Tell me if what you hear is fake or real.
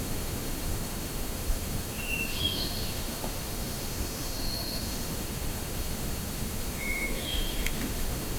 fake